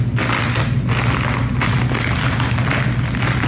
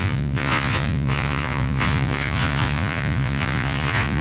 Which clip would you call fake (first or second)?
second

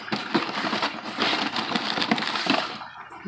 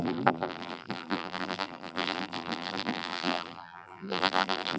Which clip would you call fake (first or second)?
second